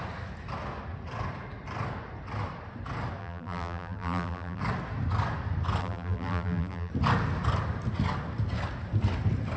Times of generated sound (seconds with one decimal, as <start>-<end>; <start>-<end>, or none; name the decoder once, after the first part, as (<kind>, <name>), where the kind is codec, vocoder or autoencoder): 3.2-4.6 (vocoder, BigVGAN v2); 5.8-6.9

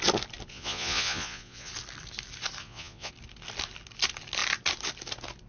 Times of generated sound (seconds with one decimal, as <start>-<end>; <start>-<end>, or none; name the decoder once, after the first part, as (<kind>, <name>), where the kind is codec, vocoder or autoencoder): 0.5-1.7 (vocoder, Vocos); 2.6-3.1

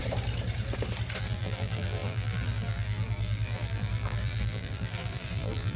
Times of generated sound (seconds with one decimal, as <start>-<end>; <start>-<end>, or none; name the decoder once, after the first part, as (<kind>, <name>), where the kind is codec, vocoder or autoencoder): 1.2-5.8 (vocoder, BigVGAN v2)

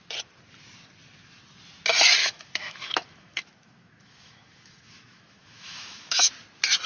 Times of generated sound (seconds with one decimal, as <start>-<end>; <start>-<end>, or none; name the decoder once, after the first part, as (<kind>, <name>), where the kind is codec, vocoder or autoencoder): 2.2-6.3 (autoencoder, DAC-VAE)